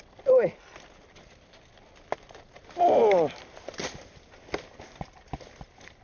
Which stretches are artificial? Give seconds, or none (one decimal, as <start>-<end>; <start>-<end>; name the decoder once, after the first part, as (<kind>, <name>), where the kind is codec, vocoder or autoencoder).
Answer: none

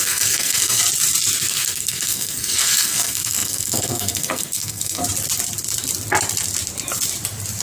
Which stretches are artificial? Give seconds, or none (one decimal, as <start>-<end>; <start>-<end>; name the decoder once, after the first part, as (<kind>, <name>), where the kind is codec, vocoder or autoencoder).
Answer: 0.0-0.8 (codec, SNAC); 1.4-5.0